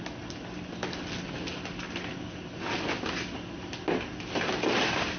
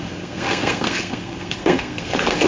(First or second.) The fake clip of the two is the second